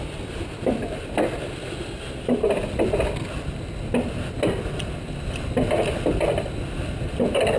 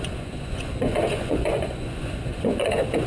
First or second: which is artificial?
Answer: second